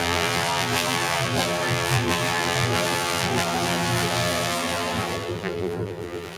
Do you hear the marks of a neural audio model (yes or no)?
yes